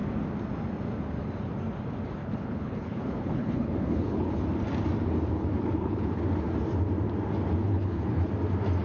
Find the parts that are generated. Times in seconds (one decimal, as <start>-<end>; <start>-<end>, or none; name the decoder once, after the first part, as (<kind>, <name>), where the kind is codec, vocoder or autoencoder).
2.2-4.4 (codec, HILCodec); 5.3-6.2; 7.6-8.3